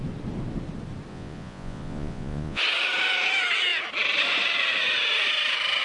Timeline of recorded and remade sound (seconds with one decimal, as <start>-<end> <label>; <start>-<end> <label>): 0.0-1.1 recorded; 1.1-2.6 remade; 2.6-5.8 recorded